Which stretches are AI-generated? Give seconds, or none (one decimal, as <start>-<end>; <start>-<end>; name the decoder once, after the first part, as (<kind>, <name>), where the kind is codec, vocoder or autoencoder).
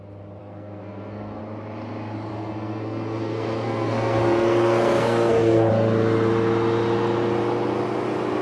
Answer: 0.4-1.4 (codec, SNAC); 2.3-5.7